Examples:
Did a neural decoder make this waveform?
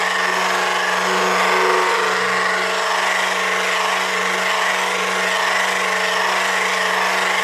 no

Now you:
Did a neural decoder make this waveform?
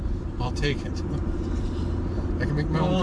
yes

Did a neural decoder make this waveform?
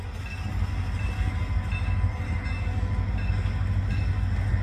no